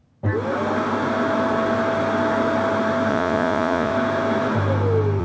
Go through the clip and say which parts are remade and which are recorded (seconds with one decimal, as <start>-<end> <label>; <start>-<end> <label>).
0.0-3.1 recorded; 3.1-3.9 remade; 3.9-5.2 recorded